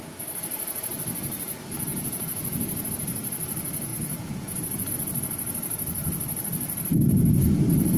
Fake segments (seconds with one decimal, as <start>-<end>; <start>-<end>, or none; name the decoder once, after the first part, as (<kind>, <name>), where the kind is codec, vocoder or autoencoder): 1.9-2.9 (vocoder, Vocos); 3.9-4.9